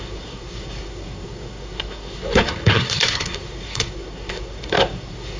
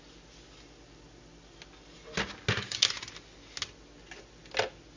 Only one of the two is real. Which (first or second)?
second